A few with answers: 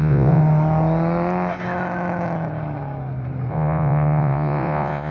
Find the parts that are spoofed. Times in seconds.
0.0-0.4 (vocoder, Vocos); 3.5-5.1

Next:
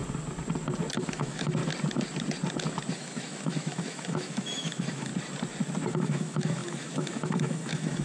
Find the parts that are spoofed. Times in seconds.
1.0-1.6 (autoencoder, DAC-VAE); 2.9-5.1; 5.9-8.0

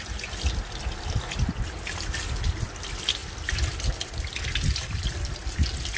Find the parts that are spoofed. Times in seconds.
none